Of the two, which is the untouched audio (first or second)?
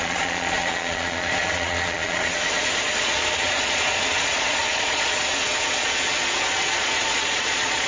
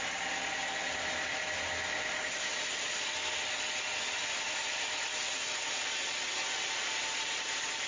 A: second